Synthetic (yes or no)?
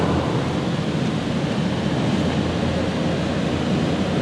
no